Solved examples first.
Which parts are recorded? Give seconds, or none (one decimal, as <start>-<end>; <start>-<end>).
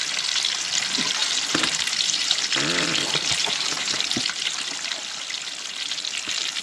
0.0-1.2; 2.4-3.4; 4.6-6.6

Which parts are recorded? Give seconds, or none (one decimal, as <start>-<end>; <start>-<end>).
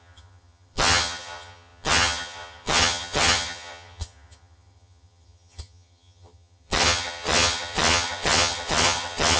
none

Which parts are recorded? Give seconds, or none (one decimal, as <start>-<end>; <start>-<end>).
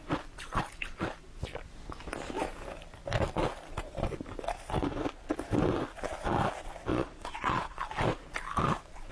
0.0-6.9; 7.8-9.1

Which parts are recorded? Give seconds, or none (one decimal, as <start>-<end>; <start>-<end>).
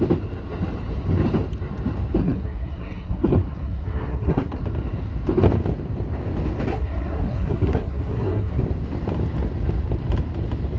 0.0-2.2; 4.6-6.7; 8.6-10.8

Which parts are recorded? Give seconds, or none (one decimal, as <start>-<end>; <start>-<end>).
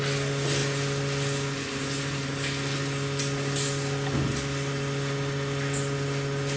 0.0-6.6